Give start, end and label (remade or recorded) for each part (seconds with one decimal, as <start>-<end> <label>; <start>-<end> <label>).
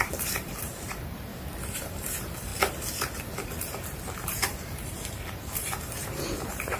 0.0-1.3 remade; 1.3-1.8 recorded; 1.8-2.5 remade; 2.5-3.2 recorded; 3.2-6.8 remade